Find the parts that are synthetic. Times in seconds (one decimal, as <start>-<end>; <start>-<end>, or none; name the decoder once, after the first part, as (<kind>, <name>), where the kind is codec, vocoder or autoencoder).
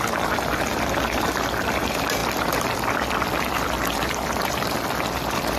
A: 0.0-5.6 (vocoder, BigVGAN v2)